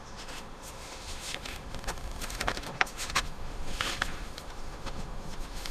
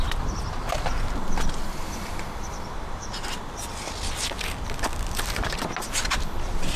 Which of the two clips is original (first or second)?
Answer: second